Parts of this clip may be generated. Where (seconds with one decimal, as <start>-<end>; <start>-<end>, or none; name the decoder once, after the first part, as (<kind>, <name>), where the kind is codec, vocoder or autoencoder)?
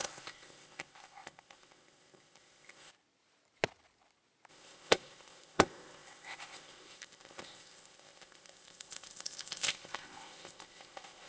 0.0-2.9 (codec, ZipCodec); 4.5-11.3